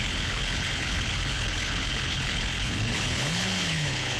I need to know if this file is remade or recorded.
remade